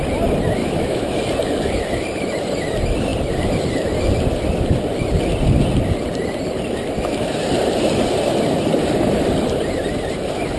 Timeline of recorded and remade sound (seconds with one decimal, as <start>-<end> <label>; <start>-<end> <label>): 0.0-0.6 recorded; 0.6-1.2 remade; 1.2-10.6 recorded